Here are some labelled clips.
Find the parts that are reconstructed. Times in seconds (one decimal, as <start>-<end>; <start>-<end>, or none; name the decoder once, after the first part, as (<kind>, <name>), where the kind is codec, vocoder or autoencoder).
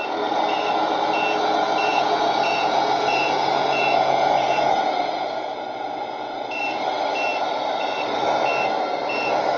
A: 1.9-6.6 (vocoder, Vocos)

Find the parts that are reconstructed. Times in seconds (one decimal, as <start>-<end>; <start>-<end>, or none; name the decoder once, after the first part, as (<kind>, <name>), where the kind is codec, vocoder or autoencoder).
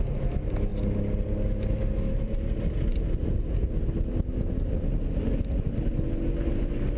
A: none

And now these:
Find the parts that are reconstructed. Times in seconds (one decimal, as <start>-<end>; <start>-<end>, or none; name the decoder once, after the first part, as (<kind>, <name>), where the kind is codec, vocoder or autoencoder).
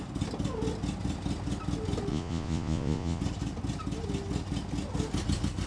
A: 2.1-3.2 (vocoder, Vocos)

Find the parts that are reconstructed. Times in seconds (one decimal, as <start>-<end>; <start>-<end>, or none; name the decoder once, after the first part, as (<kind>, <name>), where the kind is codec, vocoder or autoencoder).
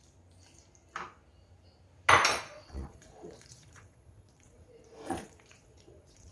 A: 2.3-6.3 (vocoder, Vocos)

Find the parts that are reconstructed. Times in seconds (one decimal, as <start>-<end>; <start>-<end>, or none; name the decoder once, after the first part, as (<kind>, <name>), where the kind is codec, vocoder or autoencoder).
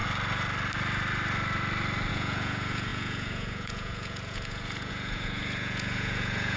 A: 2.1-6.6 (vocoder, Vocos)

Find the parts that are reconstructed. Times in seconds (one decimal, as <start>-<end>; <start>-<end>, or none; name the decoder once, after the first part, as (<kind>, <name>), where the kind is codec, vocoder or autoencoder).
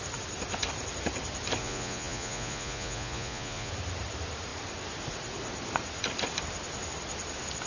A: 1.6-3.7 (vocoder, Vocos)